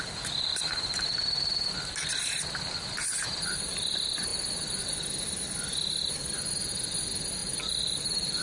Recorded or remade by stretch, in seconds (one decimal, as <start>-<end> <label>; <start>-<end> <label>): 0.0-7.4 recorded; 7.4-8.4 remade